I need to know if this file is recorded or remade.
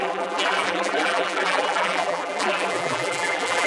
remade